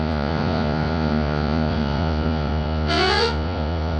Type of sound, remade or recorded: remade